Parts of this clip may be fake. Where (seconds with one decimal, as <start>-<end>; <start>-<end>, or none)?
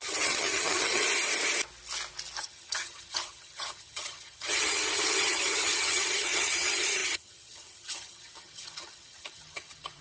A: 0.0-1.0; 2.4-10.0